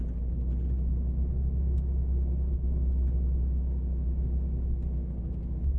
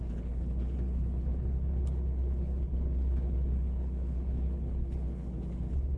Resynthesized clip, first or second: second